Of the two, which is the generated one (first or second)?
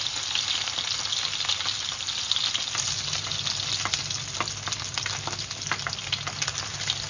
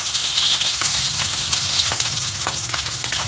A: second